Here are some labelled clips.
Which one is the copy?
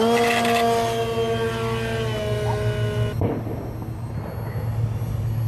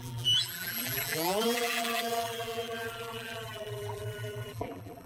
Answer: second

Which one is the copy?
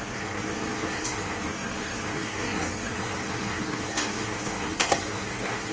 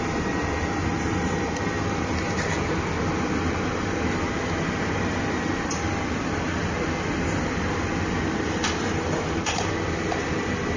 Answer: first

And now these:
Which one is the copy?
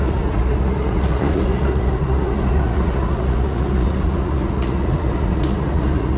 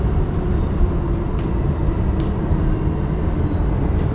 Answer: first